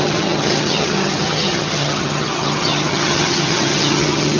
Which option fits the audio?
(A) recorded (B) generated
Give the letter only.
B